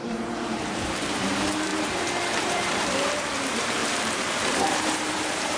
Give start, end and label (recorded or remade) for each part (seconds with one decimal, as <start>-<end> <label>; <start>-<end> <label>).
0.0-5.6 remade